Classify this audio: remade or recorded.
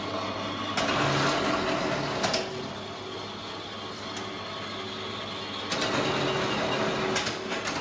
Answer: recorded